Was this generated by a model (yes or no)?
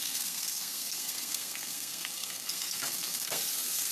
yes